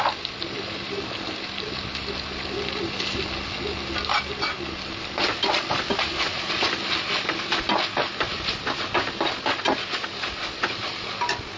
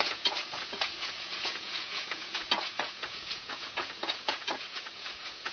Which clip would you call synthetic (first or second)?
second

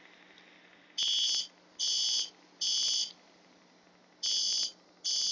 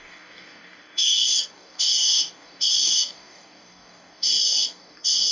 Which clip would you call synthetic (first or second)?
second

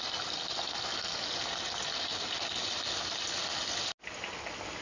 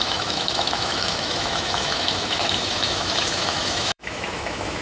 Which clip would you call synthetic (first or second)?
second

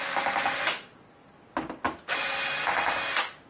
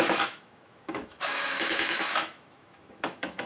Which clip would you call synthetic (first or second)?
second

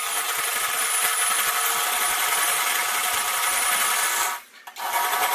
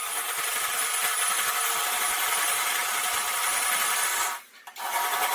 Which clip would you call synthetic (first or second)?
second